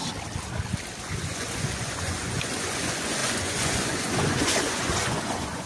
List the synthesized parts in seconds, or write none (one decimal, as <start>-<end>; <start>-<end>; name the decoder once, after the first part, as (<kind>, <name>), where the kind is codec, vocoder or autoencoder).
1.0-5.7 (vocoder, Vocos)